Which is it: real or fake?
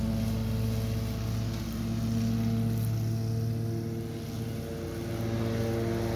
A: real